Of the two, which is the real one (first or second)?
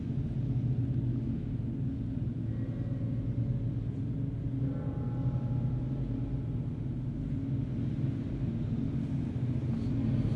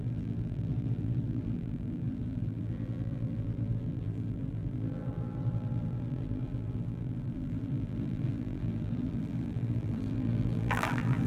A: first